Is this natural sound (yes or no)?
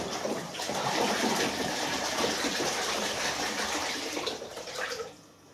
no